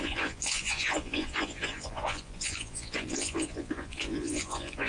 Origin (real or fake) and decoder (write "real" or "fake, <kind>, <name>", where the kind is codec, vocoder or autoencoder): fake, vocoder, Vocos